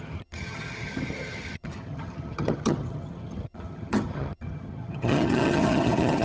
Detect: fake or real fake